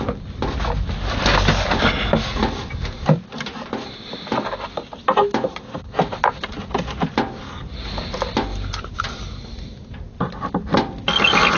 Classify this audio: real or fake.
real